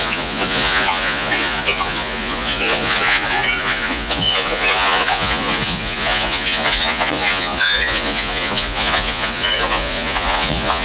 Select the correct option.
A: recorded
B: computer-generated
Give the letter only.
B